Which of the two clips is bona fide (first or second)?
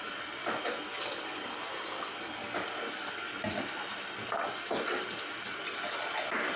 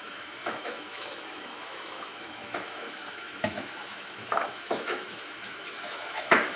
first